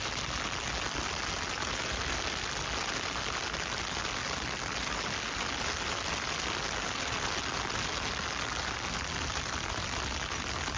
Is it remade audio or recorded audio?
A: recorded